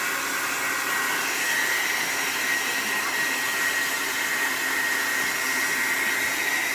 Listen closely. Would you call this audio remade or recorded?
recorded